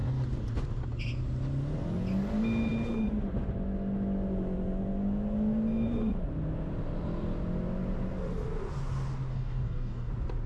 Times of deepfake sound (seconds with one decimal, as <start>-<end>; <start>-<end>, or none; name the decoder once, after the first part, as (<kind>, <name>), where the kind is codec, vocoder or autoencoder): 9.3-10.1 (codec, DAC)